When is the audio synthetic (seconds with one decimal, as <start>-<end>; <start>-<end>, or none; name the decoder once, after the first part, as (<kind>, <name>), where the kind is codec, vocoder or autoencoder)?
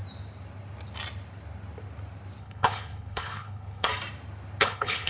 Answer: 2.4-3.9 (codec, HILCodec); 4.6-5.1